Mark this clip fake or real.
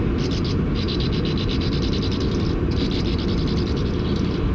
real